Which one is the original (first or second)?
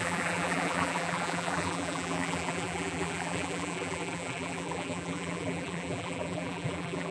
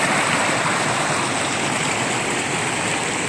second